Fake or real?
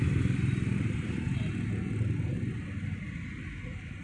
real